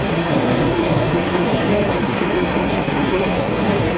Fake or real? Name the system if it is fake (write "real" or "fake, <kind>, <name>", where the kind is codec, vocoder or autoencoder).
fake, codec, SNAC